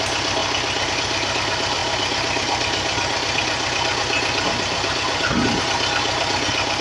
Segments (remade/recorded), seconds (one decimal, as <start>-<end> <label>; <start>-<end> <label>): 0.0-6.8 recorded